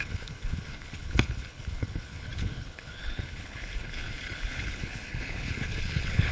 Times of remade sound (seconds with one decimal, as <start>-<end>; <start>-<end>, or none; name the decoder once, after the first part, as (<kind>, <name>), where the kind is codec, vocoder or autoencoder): 0.0-6.3 (codec, HILCodec)